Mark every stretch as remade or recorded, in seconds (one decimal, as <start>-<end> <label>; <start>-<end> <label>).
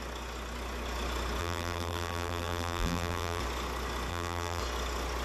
0.0-1.4 recorded; 1.4-3.4 remade; 3.4-4.1 recorded; 4.1-4.6 remade; 4.6-5.2 recorded